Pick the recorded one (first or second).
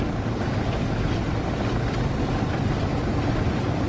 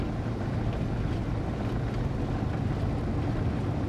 second